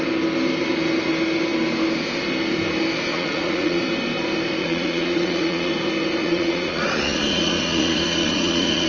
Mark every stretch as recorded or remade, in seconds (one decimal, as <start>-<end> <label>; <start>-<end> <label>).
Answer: 0.0-3.1 recorded; 3.1-3.8 remade; 3.8-4.6 recorded; 4.6-5.7 remade; 5.7-6.2 recorded; 6.2-8.9 remade